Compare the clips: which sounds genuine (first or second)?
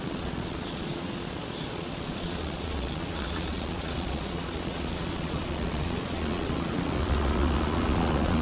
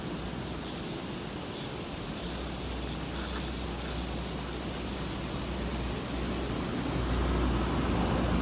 second